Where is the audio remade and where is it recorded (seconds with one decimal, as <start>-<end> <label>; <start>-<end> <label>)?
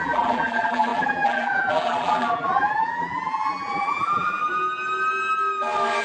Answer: 0.0-4.4 remade; 4.4-6.0 recorded